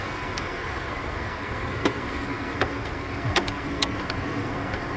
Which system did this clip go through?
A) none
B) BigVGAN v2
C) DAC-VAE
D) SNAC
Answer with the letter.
D